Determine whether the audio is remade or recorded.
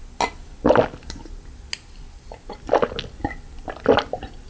recorded